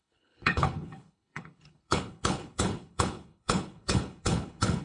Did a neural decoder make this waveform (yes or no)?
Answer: yes